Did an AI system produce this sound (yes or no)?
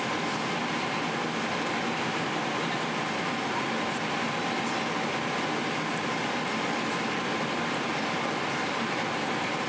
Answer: no